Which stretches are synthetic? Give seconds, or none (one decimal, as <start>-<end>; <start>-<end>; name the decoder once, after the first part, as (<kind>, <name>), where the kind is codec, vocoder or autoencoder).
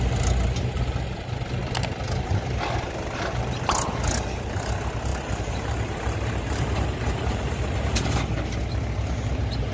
5.1-8.2 (vocoder, BigVGAN v2)